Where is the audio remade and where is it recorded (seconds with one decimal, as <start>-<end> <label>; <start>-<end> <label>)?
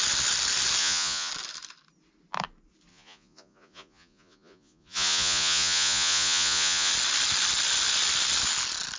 0.0-0.8 recorded; 0.8-1.3 remade; 1.3-2.9 recorded; 2.9-6.9 remade; 6.9-9.0 recorded